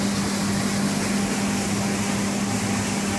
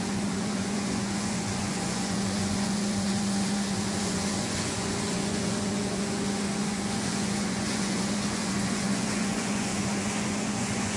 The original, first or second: first